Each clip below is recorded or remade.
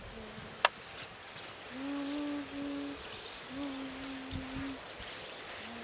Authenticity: recorded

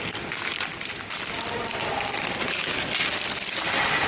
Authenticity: recorded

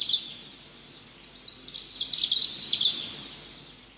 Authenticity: recorded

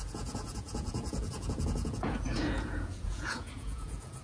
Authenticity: remade